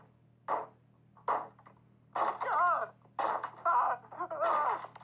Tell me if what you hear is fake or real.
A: real